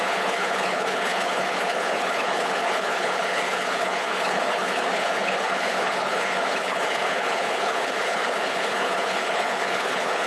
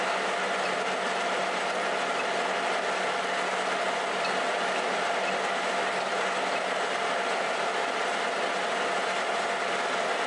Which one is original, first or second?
second